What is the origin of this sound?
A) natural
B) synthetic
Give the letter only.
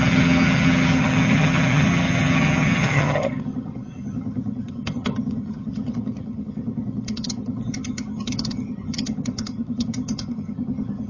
B